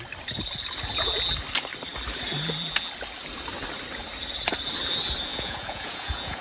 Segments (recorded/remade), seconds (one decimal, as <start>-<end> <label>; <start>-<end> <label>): 0.0-5.3 recorded; 5.3-6.4 remade